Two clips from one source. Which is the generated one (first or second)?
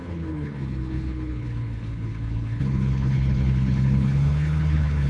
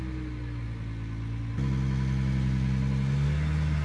first